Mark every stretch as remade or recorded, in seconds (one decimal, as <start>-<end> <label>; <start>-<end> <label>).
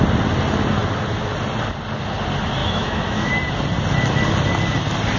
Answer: 0.0-2.6 recorded; 2.6-3.3 remade; 3.3-5.2 recorded